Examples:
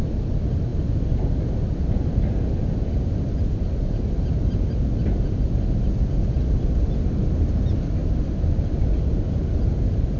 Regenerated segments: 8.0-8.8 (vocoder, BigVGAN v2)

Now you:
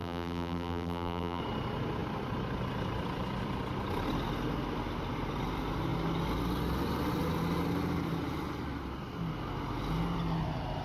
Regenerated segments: 0.0-1.4 (vocoder, BigVGAN v2)

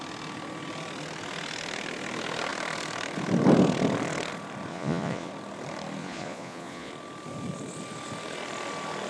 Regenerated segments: 4.7-5.3 (vocoder, Vocos); 6.0-6.9

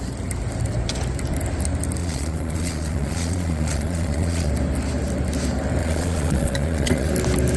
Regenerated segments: 2.0-4.5 (vocoder, Vocos); 5.8-7.1

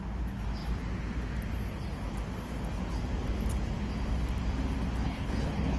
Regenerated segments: 5.0-5.8 (codec, HILCodec)

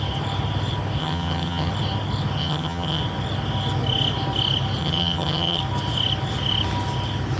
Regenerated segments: 1.0-1.7 (vocoder, HiFi-GAN); 2.4-3.0; 4.8-5.6

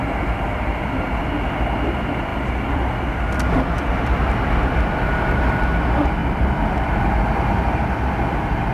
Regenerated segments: 2.3-4.0 (vocoder, BigVGAN v2); 6.2-7.9